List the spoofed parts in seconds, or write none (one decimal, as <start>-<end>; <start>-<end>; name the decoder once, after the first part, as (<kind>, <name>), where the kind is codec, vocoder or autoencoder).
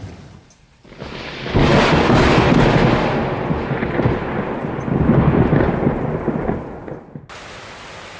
none